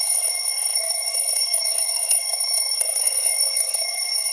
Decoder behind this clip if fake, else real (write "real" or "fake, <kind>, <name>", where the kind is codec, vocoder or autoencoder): fake, codec, SNAC